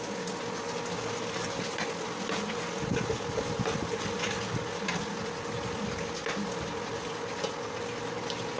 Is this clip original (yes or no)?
yes